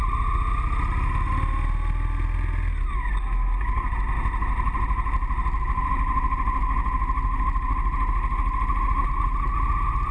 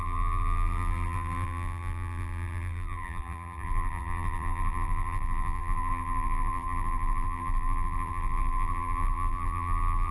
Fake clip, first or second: second